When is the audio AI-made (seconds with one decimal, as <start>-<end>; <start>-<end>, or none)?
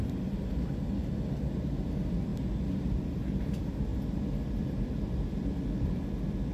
none